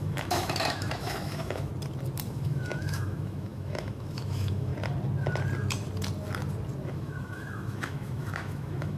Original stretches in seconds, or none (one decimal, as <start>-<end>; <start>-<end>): 1.7-2.3; 4.7-6.9